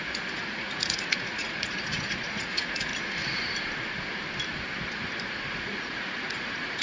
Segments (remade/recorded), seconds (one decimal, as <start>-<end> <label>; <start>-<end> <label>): 0.0-2.9 remade; 2.9-5.4 recorded; 5.4-6.8 remade